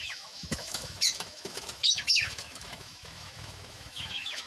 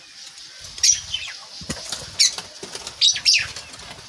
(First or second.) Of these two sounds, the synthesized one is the first